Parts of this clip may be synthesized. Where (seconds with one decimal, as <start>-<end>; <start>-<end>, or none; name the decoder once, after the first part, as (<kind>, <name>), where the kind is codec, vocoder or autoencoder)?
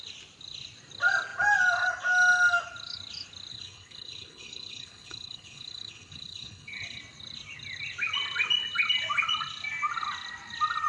3.5-7.0 (codec, HILCodec)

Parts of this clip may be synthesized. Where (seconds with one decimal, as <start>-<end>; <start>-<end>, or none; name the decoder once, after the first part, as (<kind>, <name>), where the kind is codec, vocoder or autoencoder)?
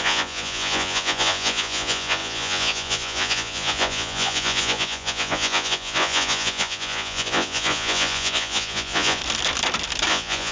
0.0-9.2 (vocoder, Vocos); 10.1-10.5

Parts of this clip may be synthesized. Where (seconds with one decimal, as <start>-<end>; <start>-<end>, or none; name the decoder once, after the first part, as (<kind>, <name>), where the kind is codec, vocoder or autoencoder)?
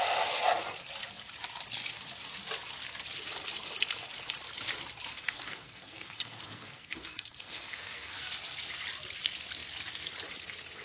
5.1-8.3 (codec, SNAC)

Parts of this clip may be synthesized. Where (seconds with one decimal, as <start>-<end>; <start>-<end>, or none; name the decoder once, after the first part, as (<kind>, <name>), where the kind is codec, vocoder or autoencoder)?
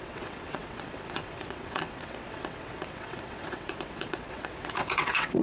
0.0-5.4 (vocoder, WaveNeXt)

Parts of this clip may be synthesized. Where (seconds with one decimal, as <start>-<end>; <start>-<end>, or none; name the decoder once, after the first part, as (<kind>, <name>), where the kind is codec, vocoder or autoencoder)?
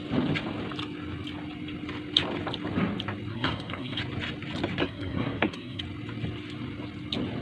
3.3-4.0 (codec, SNAC); 4.8-5.8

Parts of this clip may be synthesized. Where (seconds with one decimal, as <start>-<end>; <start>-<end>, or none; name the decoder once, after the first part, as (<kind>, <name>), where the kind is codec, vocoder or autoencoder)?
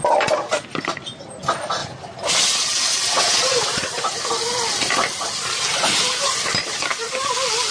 2.9-4.0 (vocoder, WaveNeXt)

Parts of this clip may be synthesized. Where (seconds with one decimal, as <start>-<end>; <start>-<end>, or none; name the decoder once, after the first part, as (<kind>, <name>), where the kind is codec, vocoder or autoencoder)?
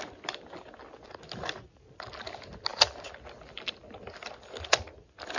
none